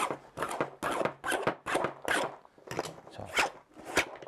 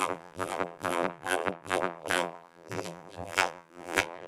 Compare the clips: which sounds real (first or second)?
first